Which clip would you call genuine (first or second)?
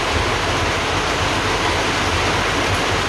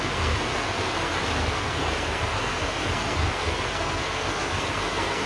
first